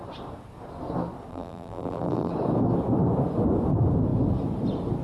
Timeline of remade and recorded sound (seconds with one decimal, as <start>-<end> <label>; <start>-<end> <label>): 0.0-1.3 recorded; 1.3-2.3 remade; 2.3-5.0 recorded